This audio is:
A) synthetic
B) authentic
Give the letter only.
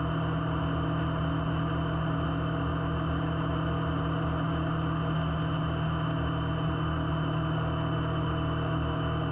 B